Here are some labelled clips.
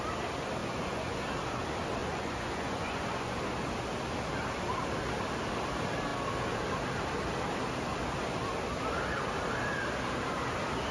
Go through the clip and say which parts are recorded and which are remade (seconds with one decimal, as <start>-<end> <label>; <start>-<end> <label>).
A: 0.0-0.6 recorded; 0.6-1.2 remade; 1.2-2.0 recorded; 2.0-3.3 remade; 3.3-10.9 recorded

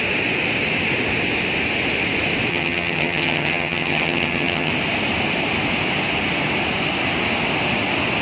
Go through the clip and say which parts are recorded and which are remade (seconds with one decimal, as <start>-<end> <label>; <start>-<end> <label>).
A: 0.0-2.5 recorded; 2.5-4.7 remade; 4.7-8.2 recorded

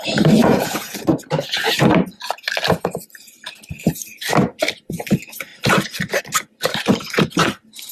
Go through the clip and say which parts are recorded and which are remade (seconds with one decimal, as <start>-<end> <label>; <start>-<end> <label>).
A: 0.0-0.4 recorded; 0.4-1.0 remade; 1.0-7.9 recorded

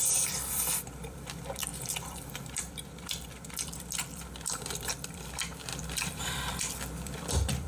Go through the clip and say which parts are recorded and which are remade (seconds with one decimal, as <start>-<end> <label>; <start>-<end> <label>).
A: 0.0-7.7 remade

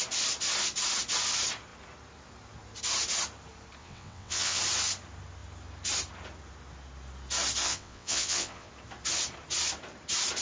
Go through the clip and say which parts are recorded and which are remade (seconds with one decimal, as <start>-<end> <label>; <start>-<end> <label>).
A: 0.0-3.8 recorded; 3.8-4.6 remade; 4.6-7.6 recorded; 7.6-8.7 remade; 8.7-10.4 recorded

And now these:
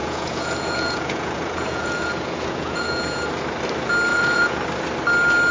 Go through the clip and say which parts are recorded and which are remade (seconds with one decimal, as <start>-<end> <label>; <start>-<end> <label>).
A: 0.0-3.0 remade; 3.0-4.1 recorded; 4.1-4.6 remade; 4.6-5.5 recorded